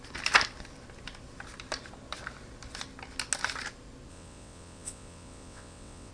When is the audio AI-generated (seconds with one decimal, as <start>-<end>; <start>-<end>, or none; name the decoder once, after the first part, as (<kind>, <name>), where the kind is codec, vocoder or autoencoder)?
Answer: 4.1-6.1 (vocoder, WaveNeXt)